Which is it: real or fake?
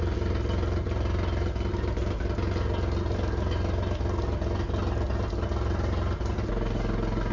real